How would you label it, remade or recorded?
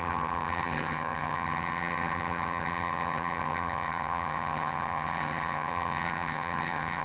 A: remade